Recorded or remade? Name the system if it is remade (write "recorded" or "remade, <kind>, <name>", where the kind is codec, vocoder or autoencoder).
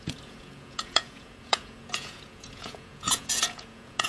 remade, vocoder, Vocos